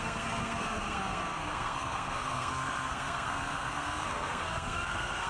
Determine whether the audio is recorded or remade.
remade